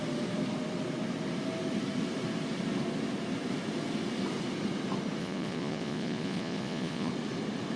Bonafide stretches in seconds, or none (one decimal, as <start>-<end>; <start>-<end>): 0.0-5.2; 7.1-7.8